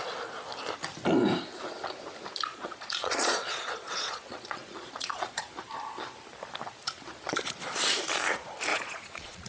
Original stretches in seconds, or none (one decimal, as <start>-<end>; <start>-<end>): 0.0-2.5; 5.5-8.7